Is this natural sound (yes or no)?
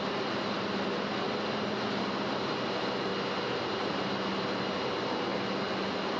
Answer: yes